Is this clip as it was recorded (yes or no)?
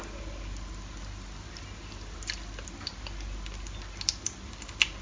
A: yes